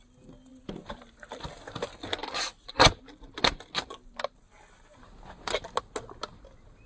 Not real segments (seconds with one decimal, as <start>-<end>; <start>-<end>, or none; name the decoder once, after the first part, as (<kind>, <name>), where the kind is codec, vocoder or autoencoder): 0.5-1.4 (vocoder, BigVGAN v2)